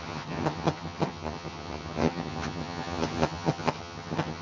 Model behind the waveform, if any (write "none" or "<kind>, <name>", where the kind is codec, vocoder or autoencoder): vocoder, HiFi-GAN